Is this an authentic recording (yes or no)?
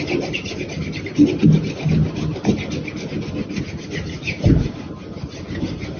yes